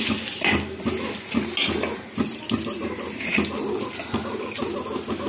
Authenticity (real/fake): real